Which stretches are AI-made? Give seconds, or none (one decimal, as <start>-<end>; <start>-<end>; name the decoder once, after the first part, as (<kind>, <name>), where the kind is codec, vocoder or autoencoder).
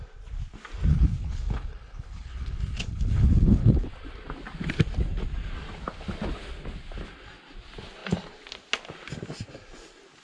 0.9-3.9 (codec, HILCodec)